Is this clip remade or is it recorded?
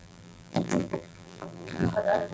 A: remade